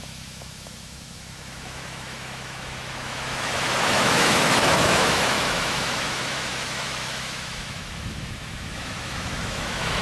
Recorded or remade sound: remade